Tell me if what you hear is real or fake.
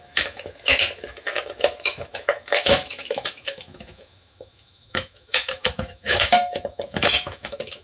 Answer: fake